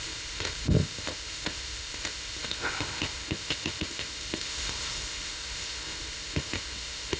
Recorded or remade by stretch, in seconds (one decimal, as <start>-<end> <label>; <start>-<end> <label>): 0.0-7.2 remade